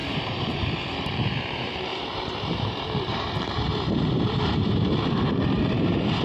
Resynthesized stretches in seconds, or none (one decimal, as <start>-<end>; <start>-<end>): 0.0-6.2